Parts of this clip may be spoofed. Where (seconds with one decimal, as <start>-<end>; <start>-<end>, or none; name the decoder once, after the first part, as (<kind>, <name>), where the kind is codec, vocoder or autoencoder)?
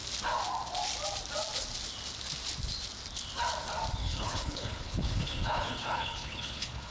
4.0-6.9 (codec, HILCodec)